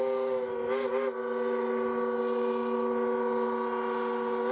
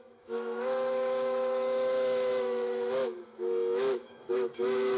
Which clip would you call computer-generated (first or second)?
second